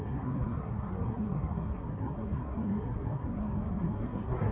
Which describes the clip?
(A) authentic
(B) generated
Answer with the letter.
B